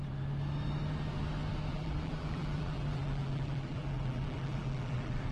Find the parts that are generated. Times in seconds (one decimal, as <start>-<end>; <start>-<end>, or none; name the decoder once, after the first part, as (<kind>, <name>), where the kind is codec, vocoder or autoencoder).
1.7-5.3 (vocoder, BigVGAN v2)